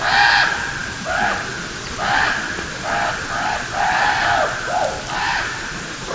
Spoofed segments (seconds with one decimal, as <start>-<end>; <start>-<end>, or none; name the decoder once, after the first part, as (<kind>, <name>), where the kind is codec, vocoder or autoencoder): none